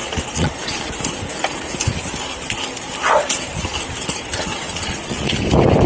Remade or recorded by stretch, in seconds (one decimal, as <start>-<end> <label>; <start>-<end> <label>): 0.0-0.9 remade; 0.9-4.5 recorded; 4.5-5.3 remade; 5.3-5.9 recorded